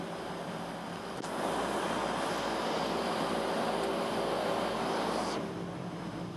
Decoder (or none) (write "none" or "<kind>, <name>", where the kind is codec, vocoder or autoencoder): none